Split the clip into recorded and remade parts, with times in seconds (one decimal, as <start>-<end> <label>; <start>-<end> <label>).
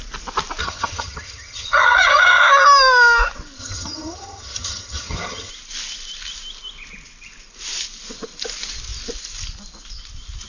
0.0-0.6 recorded; 0.6-2.4 remade; 2.4-3.6 recorded; 3.6-5.5 remade; 5.5-10.5 recorded